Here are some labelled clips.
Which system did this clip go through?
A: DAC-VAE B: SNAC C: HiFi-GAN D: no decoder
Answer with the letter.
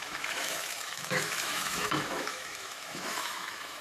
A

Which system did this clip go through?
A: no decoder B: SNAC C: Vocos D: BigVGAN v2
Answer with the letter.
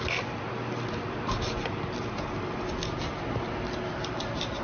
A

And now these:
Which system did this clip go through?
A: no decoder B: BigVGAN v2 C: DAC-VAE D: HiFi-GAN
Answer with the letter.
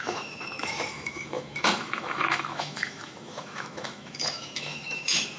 C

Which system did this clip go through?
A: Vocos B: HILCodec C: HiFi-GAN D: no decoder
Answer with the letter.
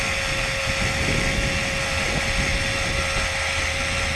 D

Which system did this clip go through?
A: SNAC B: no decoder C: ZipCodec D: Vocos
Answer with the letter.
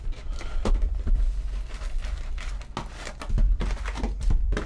B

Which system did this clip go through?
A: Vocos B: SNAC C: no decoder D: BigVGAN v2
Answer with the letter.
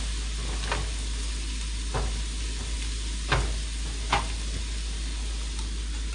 C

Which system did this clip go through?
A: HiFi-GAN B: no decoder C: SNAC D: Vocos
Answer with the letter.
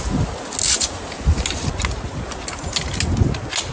B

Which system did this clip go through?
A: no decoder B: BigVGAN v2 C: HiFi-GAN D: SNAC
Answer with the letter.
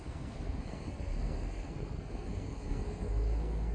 D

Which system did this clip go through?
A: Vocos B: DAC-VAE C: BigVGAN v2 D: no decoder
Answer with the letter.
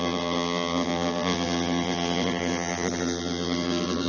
C